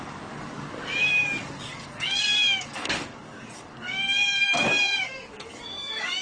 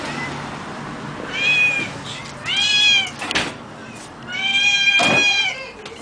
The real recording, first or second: second